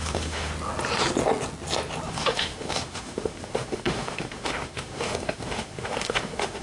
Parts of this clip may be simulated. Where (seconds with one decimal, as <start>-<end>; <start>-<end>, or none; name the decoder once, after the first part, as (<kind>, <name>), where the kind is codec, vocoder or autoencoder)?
0.0-0.5 (autoencoder, DAC-VAE); 2.1-6.6